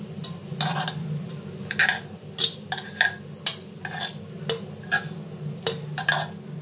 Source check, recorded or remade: recorded